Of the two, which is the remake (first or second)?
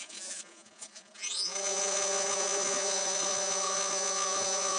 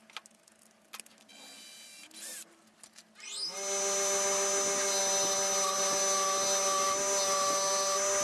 first